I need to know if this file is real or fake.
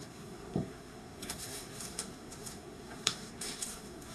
fake